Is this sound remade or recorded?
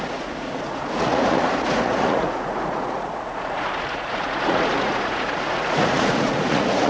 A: remade